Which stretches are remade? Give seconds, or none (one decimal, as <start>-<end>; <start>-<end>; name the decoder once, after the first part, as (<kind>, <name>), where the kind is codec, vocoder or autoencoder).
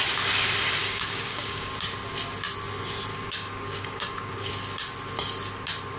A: 0.8-1.7 (codec, DAC); 3.1-4.5